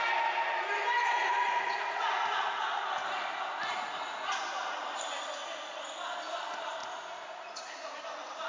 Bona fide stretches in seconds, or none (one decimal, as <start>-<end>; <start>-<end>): 0.0-1.2; 4.2-6.8; 8.0-8.5

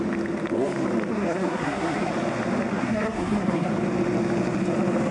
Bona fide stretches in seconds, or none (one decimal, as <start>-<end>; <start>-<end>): 0.0-1.1; 2.1-2.7; 3.7-5.1